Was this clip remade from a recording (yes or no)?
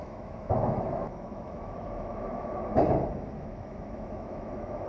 yes